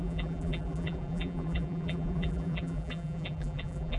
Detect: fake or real fake